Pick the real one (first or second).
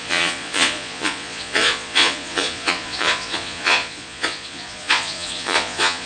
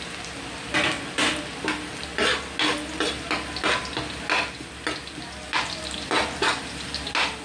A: second